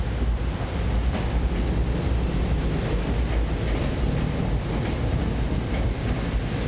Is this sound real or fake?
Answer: real